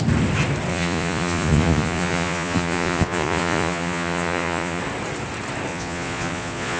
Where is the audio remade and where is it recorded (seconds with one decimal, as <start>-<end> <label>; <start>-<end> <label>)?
0.0-0.7 recorded; 0.7-4.8 remade; 4.8-5.7 recorded; 5.7-6.8 remade